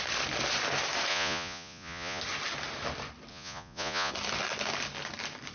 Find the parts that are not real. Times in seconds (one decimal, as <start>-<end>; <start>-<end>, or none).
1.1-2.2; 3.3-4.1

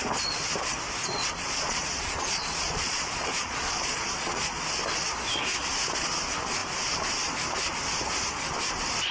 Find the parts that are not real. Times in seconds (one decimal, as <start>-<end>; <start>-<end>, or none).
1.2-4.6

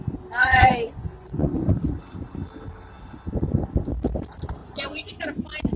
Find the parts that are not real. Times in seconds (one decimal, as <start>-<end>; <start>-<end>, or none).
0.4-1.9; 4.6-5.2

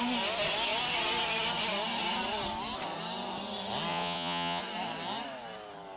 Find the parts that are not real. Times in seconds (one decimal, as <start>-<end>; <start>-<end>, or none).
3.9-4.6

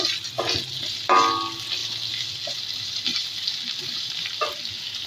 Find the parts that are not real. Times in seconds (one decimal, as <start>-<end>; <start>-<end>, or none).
none

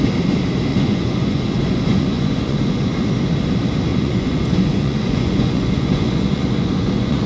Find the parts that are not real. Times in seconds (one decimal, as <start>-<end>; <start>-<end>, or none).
0.7-2.9; 3.9-7.3

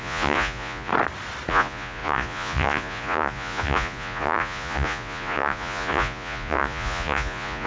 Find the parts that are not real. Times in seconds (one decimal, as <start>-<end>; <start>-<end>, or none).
0.0-0.9; 1.5-7.7